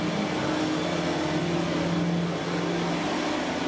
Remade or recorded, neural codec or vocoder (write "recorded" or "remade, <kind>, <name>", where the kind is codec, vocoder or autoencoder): recorded